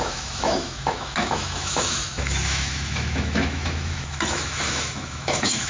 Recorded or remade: remade